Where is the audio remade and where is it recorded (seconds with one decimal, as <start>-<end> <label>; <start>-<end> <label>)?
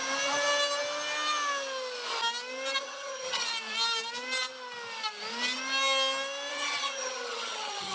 0.0-2.8 recorded; 2.8-3.5 remade; 3.5-6.5 recorded; 6.5-7.9 remade